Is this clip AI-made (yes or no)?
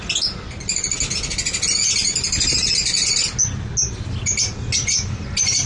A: no